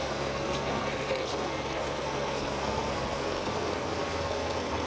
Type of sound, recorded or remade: remade